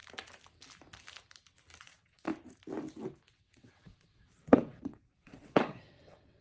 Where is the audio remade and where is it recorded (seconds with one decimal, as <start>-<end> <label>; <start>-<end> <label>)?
0.0-1.8 recorded; 1.8-2.3 remade; 2.3-3.3 recorded; 3.3-6.4 remade